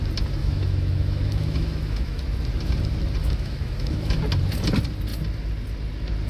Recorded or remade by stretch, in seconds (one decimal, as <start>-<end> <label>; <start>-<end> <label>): 0.0-0.4 recorded; 0.4-2.2 remade; 2.2-3.2 recorded; 3.2-4.2 remade; 4.2-6.3 recorded